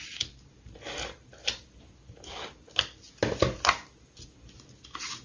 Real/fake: real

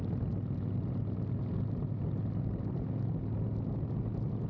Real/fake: real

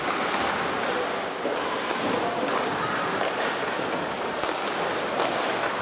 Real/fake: real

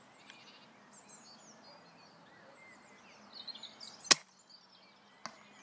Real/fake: real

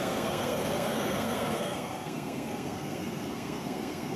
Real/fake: fake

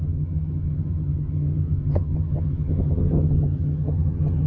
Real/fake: fake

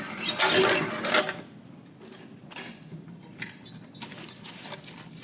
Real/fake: real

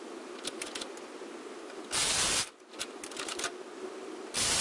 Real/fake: real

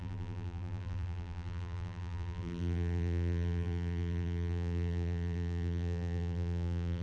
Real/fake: fake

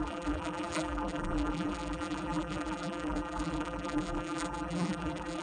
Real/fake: fake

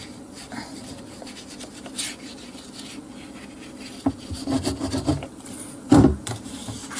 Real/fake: fake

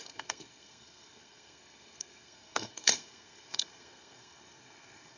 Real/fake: fake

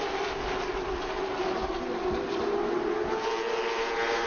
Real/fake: real